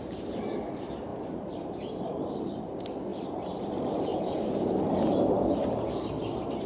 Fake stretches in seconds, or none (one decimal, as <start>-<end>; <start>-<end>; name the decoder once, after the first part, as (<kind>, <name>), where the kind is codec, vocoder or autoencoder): 1.1-2.5 (vocoder, BigVGAN v2); 3.1-3.6; 4.1-4.7